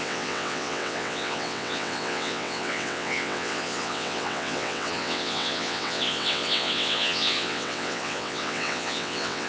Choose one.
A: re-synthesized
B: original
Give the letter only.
A